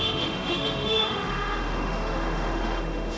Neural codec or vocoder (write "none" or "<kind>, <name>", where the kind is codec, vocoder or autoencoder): autoencoder, DAC-VAE